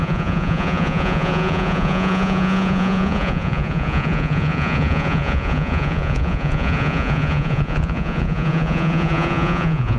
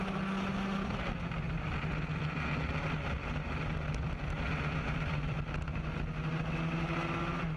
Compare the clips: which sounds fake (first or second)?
first